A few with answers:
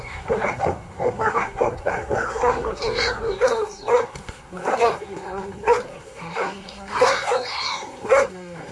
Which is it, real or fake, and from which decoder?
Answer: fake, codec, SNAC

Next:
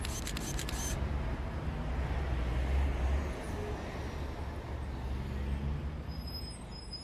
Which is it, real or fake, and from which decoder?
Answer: real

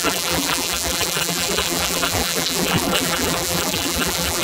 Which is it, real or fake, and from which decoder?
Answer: fake, vocoder, BigVGAN v2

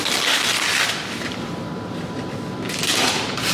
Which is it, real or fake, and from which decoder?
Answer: fake, vocoder, BigVGAN v2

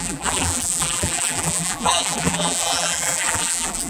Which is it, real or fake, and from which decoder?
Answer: fake, vocoder, BigVGAN v2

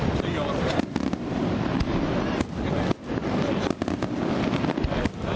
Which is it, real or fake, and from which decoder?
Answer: real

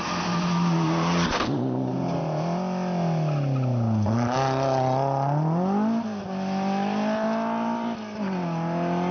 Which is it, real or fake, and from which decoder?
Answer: real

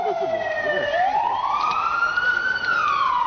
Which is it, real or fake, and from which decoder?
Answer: fake, vocoder, BigVGAN v2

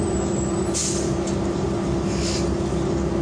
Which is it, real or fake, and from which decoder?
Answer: real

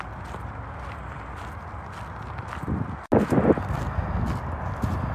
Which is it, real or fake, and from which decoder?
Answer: real